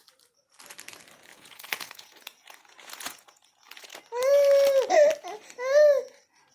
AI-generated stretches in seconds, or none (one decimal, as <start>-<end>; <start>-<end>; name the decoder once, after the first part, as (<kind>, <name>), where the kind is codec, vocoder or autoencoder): 1.3-4.0 (vocoder, Vocos)